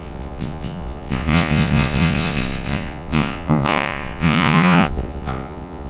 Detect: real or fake fake